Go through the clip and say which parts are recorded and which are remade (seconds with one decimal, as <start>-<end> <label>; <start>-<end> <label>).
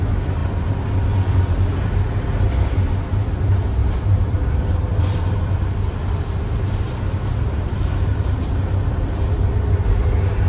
0.0-3.8 recorded; 3.8-8.7 remade; 8.7-10.5 recorded